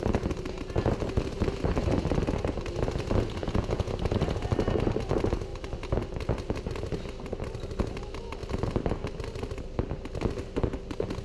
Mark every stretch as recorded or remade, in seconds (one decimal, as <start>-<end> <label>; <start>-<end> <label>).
0.0-3.4 recorded; 3.4-3.9 remade; 3.9-11.2 recorded